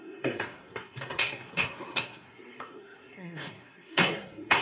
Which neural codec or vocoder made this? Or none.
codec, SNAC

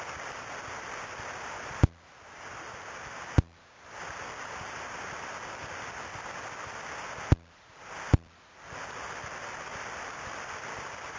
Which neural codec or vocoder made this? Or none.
none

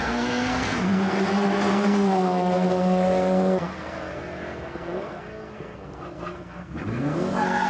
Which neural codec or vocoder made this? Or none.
codec, SNAC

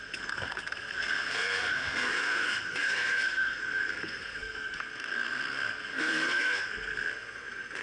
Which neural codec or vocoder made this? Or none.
codec, SNAC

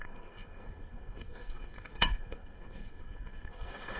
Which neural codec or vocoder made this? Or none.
codec, SNAC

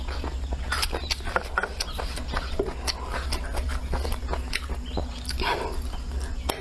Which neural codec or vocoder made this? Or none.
none